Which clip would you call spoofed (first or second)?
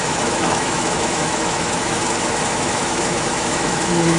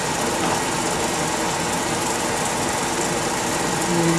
first